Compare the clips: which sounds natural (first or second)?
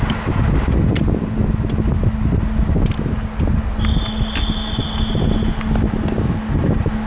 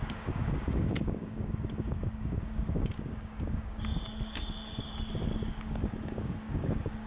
first